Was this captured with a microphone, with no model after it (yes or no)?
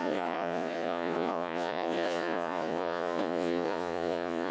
no